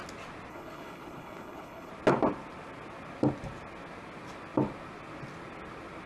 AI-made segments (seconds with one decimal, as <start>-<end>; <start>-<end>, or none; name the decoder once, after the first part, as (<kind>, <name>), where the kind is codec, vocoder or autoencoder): 0.5-1.9 (codec, HILCodec)